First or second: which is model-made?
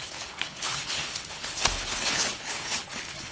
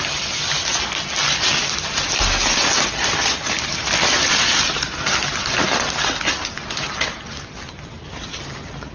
first